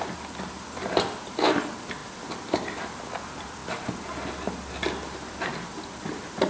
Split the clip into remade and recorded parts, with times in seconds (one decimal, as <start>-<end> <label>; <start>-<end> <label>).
0.0-6.5 recorded